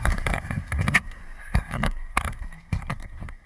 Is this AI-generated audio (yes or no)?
yes